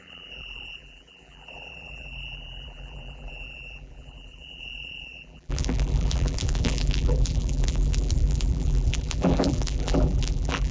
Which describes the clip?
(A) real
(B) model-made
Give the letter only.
B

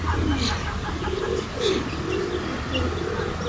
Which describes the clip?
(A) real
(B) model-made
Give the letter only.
A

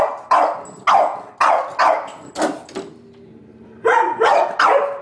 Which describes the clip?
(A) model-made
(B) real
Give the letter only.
B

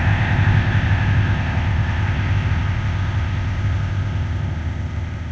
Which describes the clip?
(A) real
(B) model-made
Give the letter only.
B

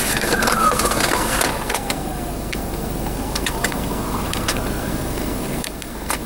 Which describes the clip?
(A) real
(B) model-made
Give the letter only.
B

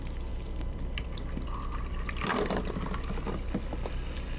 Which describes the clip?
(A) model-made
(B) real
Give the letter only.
B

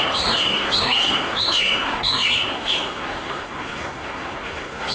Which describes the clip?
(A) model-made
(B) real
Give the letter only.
A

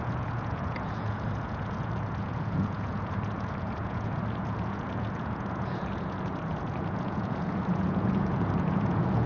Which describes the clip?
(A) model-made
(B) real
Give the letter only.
A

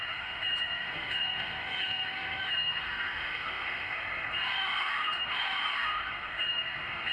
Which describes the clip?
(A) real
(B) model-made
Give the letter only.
B